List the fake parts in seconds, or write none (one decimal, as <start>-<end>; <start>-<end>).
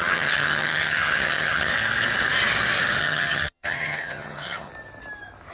0.0-1.7; 3.0-4.7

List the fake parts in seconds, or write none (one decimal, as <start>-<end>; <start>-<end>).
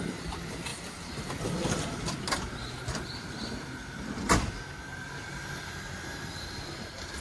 0.0-0.7; 2.2-2.6; 4.5-7.2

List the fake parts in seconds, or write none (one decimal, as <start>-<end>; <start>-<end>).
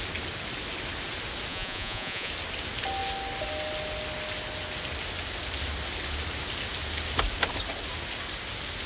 1.5-2.3